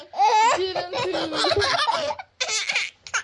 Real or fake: real